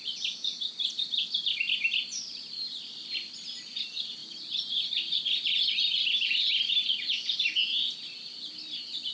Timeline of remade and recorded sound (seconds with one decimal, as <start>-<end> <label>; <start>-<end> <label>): 0.0-9.1 recorded